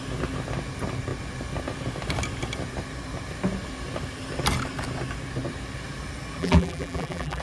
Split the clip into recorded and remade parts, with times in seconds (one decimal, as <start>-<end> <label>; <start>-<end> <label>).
0.0-6.4 recorded; 6.4-7.4 remade